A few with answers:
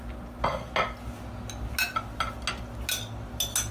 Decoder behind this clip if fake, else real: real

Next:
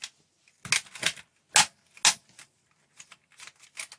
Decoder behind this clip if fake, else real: real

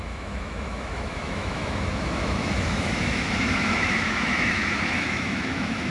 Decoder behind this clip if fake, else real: fake, autoencoder, DAC-VAE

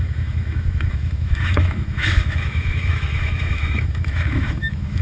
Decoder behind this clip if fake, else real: fake, autoencoder, DAC-VAE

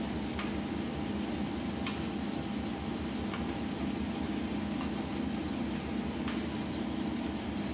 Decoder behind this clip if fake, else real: real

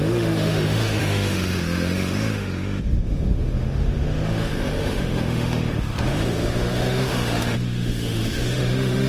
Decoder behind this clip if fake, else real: fake, autoencoder, DAC-VAE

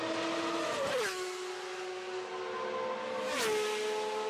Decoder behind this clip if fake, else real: real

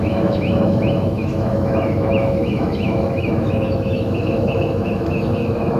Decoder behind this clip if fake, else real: fake, autoencoder, DAC-VAE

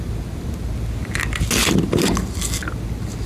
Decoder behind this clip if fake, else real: real